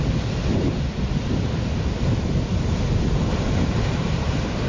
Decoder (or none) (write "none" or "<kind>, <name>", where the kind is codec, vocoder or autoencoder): vocoder, BigVGAN v2